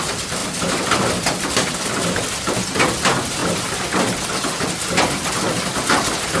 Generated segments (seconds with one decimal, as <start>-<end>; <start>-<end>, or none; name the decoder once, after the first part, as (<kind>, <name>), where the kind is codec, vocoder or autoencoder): none